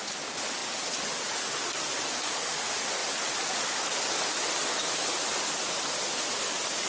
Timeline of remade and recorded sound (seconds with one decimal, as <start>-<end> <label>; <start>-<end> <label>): 0.0-6.9 recorded